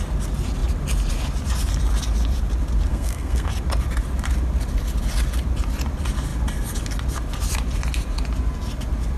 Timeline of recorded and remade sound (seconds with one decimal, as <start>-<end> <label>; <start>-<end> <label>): 0.0-2.9 recorded; 2.9-3.5 remade; 3.5-9.2 recorded